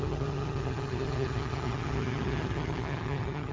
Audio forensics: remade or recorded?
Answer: remade